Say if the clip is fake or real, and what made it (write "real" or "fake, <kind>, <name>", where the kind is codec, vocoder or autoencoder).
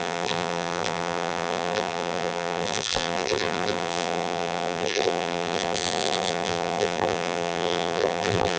fake, vocoder, BigVGAN v2